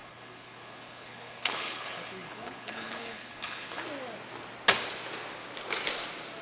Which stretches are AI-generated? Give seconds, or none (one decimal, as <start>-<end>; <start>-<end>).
0.0-3.8